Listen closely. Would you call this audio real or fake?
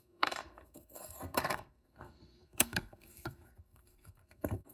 fake